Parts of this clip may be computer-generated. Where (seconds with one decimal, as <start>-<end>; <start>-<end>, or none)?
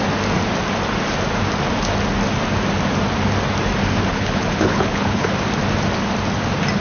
4.1-5.3